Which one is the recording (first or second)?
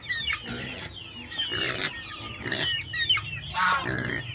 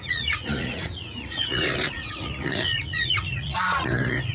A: first